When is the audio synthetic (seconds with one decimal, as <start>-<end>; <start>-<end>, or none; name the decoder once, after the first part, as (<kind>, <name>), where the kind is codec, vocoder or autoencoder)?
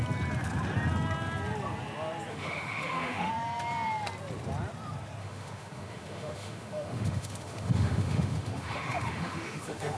2.3-3.3 (autoencoder, DAC-VAE); 5.2-10.0